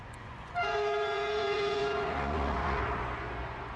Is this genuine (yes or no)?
no